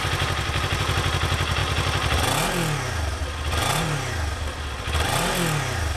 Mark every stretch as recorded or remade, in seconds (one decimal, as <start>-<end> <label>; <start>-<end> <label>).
0.0-6.0 recorded